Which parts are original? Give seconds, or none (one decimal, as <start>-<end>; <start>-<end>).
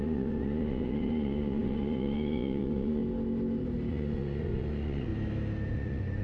3.0-3.9; 5.1-5.7